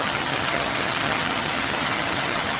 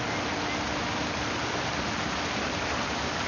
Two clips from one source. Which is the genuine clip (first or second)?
second